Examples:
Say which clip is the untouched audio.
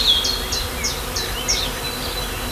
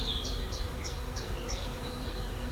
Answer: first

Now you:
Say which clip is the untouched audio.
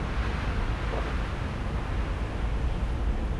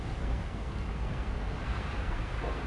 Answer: first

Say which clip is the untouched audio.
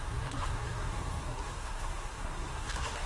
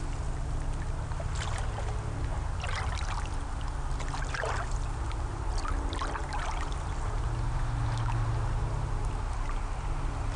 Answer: second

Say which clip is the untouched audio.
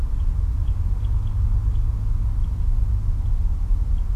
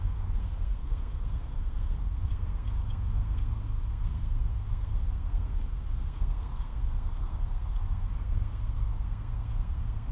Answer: first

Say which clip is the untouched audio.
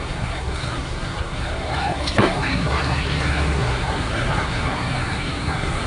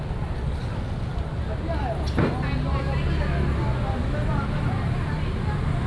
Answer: second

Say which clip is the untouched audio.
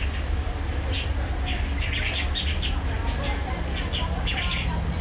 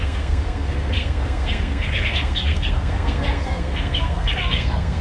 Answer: first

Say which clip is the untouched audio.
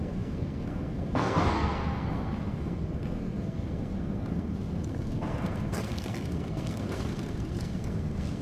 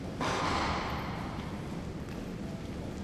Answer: second